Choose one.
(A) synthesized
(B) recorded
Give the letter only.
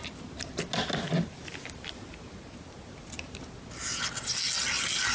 B